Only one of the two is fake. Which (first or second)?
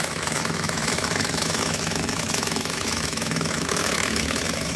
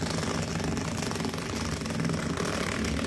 first